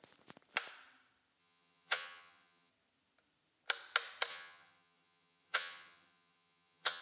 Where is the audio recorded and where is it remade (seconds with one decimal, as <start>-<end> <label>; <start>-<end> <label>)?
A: 0.0-1.4 recorded; 1.4-2.7 remade; 2.7-4.3 recorded; 4.3-7.0 remade